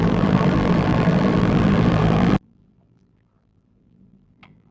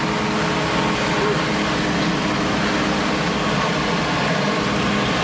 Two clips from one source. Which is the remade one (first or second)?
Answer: first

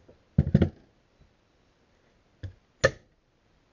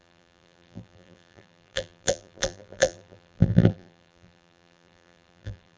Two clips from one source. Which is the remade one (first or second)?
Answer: second